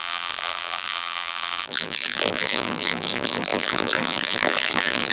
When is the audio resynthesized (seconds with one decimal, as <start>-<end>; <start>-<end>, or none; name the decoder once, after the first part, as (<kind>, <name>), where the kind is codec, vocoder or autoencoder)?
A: 0.0-5.1 (vocoder, BigVGAN v2)